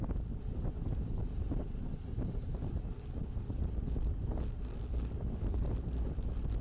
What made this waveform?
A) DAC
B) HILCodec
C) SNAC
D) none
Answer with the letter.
D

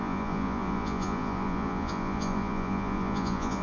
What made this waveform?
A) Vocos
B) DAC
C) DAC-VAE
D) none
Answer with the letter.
A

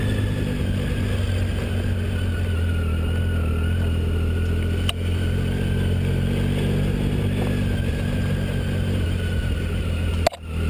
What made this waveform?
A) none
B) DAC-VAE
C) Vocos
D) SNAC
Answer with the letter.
A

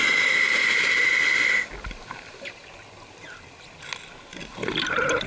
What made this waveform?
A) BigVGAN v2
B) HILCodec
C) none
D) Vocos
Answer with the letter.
C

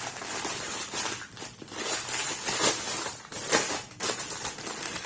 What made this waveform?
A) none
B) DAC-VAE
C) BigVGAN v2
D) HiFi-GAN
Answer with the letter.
A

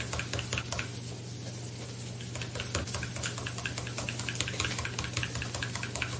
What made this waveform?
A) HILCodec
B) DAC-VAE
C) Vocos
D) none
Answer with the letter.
D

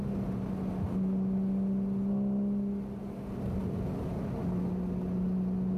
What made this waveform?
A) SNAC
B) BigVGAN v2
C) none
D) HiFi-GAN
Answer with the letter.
C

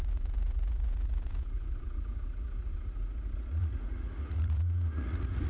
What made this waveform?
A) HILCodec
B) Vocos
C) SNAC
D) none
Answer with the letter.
B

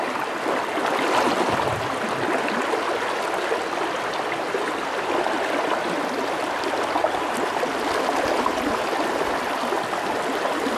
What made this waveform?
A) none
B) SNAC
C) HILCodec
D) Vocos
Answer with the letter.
A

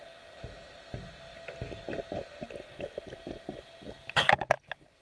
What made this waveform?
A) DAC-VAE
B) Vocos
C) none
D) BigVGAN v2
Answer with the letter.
C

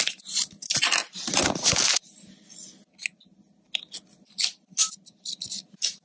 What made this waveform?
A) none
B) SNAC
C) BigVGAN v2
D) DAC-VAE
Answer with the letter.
A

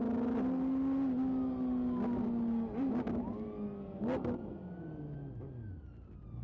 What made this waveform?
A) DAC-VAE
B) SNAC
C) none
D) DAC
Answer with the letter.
C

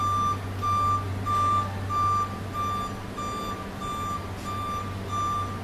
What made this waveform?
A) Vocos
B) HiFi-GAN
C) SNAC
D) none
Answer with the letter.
D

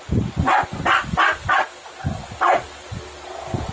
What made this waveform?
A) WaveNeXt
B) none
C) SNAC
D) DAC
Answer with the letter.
B